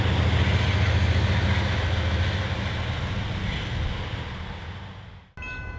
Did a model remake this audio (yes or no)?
no